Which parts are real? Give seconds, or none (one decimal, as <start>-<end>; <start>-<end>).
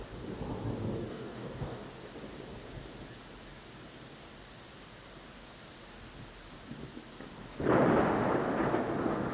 0.0-1.1; 1.8-9.3